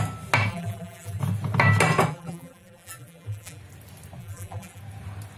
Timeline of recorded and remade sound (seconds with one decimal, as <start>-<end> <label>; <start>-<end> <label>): 0.0-0.5 recorded; 0.5-1.2 remade; 1.2-2.1 recorded; 2.1-3.6 remade; 3.6-4.2 recorded; 4.2-4.8 remade; 4.8-5.4 recorded